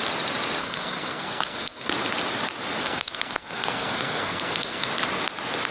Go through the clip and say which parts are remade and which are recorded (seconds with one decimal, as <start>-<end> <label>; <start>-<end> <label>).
0.0-0.6 recorded; 0.6-1.9 remade; 1.9-2.8 recorded; 2.8-4.9 remade; 4.9-5.7 recorded

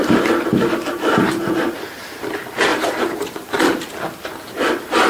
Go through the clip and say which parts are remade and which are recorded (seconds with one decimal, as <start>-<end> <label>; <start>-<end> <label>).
0.0-0.9 recorded; 0.9-1.4 remade; 1.4-2.7 recorded; 2.7-3.9 remade; 3.9-5.1 recorded